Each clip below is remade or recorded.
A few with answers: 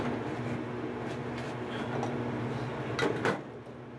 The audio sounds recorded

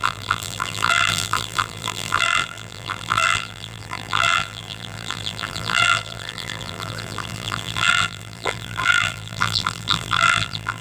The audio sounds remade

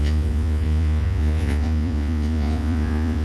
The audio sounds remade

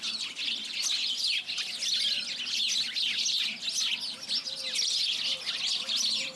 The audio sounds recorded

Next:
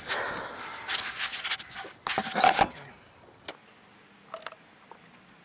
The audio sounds recorded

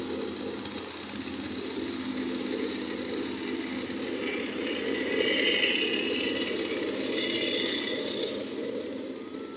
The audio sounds recorded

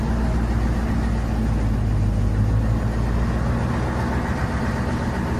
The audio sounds recorded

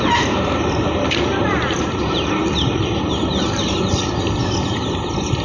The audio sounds remade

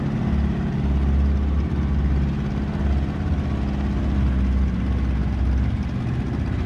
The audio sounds recorded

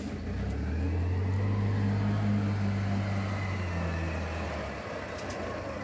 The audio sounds recorded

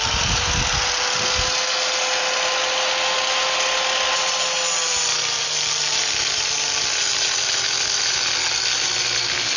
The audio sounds recorded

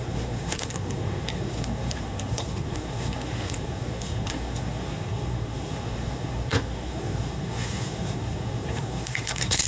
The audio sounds remade